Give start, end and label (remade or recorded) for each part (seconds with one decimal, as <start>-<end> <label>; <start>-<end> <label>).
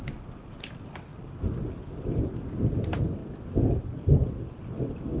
0.0-5.2 recorded